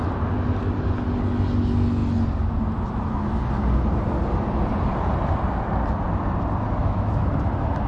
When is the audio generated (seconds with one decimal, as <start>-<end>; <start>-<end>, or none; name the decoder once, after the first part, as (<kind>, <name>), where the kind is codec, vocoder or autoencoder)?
6.8-7.3 (autoencoder, DAC-VAE)